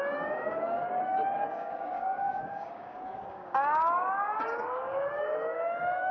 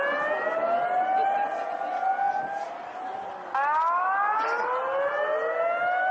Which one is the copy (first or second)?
first